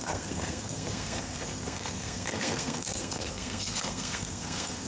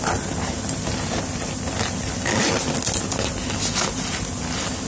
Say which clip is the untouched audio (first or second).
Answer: second